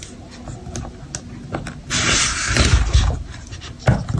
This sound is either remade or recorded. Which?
recorded